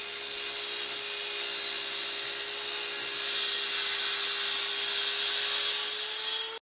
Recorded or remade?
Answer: recorded